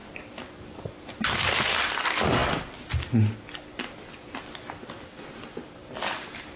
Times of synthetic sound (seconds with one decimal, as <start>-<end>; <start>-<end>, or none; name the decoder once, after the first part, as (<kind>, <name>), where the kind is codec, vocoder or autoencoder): none